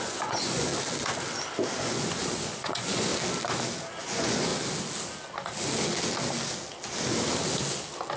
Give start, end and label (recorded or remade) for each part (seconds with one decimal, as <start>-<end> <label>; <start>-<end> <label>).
0.0-0.7 remade; 0.7-1.8 recorded; 1.8-3.1 remade; 3.1-4.0 recorded; 4.0-4.5 remade; 4.5-8.2 recorded